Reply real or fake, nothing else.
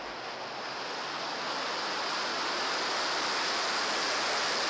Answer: real